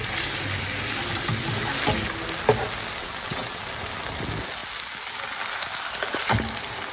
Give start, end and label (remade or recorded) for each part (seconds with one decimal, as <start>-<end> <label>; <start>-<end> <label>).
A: 0.0-3.0 recorded; 3.0-3.6 remade; 3.6-6.9 recorded